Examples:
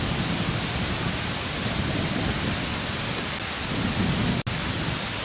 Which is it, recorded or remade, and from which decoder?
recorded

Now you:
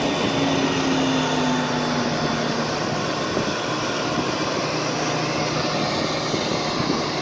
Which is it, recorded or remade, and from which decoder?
recorded